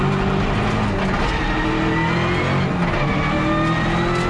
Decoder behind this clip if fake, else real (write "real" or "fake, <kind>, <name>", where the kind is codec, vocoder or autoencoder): real